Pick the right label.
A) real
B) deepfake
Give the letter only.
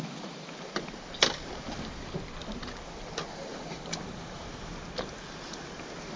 A